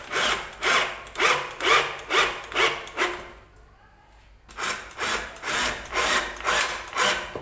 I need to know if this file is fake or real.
real